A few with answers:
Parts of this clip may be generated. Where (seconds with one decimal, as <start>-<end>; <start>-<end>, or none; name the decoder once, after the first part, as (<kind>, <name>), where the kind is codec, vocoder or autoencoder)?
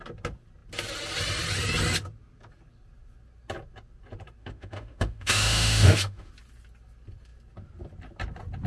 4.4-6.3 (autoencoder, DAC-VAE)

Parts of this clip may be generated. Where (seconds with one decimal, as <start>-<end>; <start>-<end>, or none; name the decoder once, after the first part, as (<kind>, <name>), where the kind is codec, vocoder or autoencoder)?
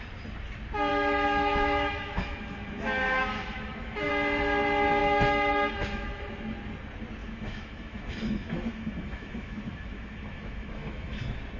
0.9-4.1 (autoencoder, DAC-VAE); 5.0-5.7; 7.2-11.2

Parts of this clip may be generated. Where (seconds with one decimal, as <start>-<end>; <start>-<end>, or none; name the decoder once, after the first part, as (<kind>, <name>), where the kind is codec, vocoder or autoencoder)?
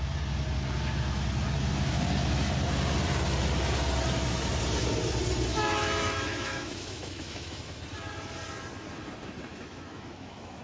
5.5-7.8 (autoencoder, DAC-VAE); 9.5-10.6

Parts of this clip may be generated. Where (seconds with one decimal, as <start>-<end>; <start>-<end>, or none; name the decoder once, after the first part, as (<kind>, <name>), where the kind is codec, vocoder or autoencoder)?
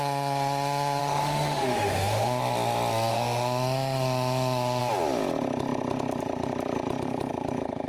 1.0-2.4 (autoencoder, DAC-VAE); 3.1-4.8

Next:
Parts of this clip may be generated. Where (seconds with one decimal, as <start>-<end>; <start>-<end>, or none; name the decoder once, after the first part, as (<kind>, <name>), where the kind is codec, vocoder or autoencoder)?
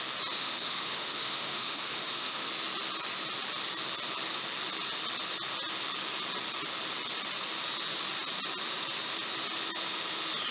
0.4-2.5 (autoencoder, DAC-VAE)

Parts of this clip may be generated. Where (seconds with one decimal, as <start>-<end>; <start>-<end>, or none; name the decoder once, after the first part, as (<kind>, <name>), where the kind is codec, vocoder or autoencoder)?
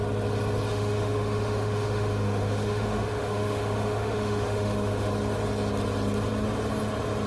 0.7-5.1 (autoencoder, DAC-VAE)